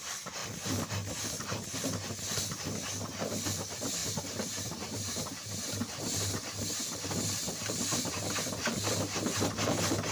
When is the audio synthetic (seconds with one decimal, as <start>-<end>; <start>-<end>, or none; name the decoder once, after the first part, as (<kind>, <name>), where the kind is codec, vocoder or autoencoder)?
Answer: 4.0-8.1 (vocoder, BigVGAN v2)